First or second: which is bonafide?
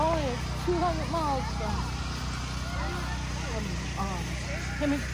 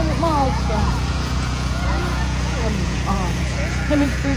first